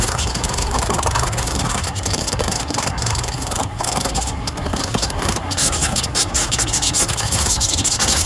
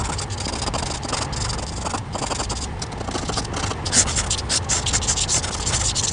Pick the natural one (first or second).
second